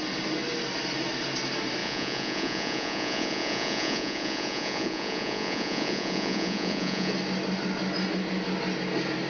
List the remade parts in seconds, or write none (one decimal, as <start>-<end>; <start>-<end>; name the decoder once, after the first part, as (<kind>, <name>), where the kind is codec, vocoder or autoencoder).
1.8-7.1 (vocoder, Vocos)